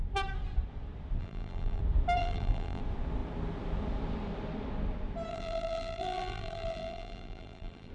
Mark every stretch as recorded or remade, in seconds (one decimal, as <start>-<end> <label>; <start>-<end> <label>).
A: 0.0-1.2 recorded; 1.2-1.8 remade; 1.8-2.2 recorded; 2.2-2.8 remade; 2.8-5.3 recorded; 5.3-7.9 remade